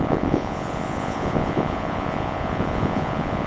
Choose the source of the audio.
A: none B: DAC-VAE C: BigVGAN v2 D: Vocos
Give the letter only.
D